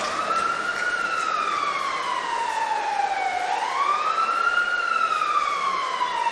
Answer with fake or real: real